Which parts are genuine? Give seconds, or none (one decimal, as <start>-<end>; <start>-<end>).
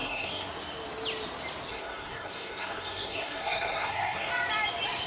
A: 0.5-1.7; 4.3-5.1